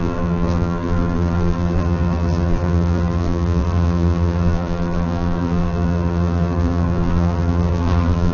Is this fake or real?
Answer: fake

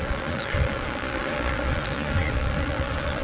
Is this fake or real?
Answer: fake